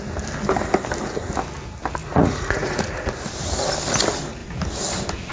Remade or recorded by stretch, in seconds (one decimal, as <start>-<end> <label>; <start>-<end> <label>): 0.0-2.0 recorded; 2.0-3.1 remade; 3.1-5.3 recorded